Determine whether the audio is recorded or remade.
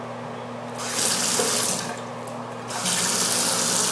recorded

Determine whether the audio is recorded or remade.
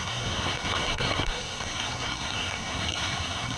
remade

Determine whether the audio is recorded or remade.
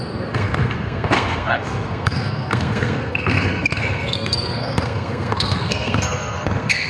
remade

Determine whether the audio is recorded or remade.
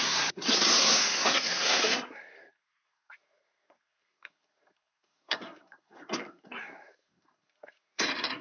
remade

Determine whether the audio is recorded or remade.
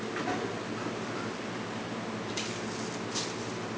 recorded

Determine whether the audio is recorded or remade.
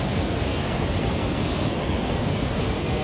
remade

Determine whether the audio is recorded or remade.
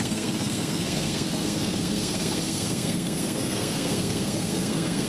remade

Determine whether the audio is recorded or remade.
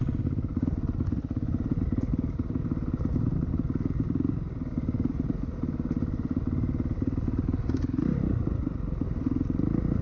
recorded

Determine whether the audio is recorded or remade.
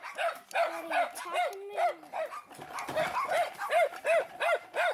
recorded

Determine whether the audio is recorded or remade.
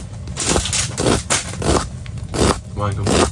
recorded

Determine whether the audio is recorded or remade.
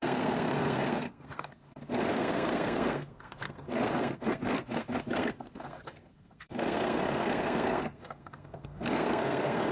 remade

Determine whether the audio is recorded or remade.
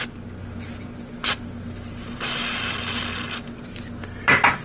recorded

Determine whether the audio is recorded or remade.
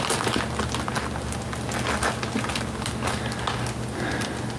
recorded